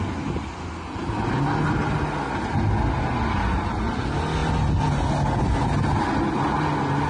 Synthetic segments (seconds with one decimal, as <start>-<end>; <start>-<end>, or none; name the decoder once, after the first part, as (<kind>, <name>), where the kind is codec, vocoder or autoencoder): none